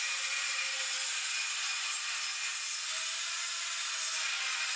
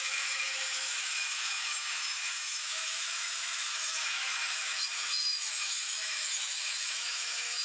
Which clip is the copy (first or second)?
second